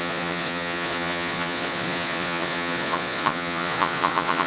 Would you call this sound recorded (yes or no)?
no